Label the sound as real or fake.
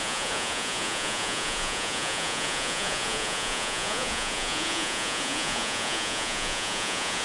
fake